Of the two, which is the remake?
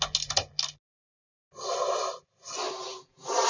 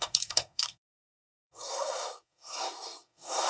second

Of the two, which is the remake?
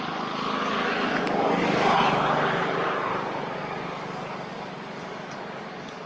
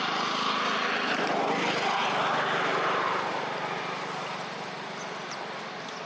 first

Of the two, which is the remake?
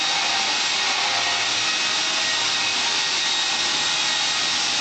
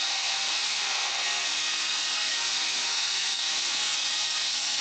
second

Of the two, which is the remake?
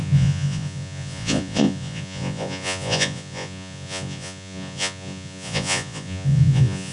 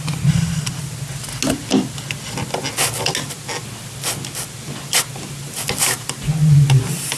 first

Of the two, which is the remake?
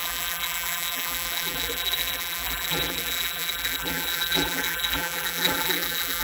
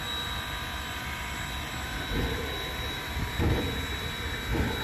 first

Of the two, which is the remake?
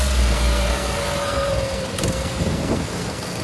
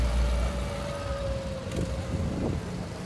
first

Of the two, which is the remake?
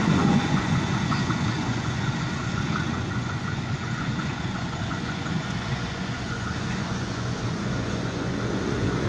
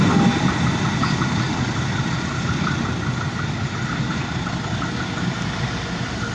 first